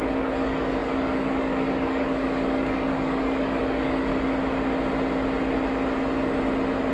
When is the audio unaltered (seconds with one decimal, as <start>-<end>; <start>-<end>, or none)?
4.1-6.9